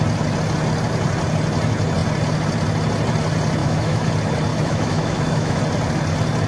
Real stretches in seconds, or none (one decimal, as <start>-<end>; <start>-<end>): 0.0-3.6; 4.1-4.5; 5.6-6.5